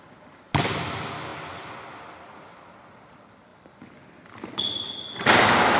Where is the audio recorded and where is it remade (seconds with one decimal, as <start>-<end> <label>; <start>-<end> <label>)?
0.0-3.5 recorded; 3.5-4.9 remade; 4.9-5.8 recorded